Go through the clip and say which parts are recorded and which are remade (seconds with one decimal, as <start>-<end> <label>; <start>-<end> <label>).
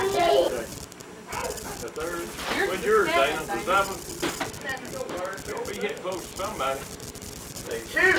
0.0-8.2 recorded